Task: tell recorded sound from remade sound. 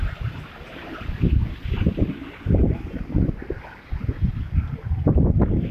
recorded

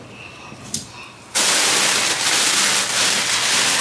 recorded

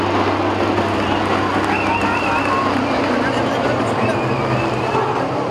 recorded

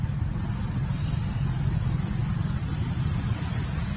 remade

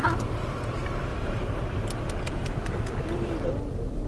recorded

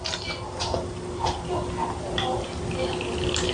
recorded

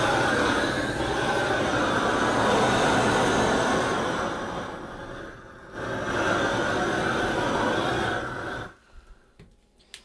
recorded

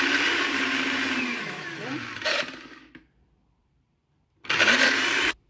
remade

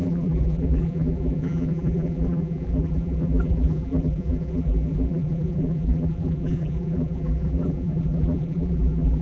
remade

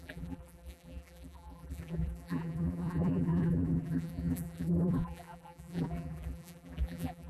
remade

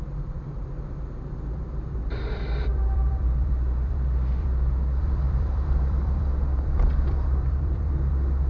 remade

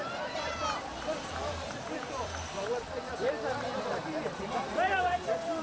remade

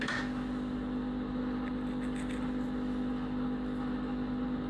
recorded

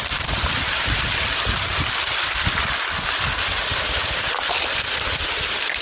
remade